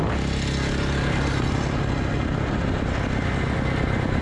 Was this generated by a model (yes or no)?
no